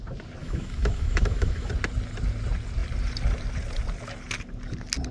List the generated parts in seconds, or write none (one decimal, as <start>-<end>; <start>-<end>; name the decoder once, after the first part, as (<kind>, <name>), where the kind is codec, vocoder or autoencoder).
0.4-1.7 (autoencoder, DAC-VAE)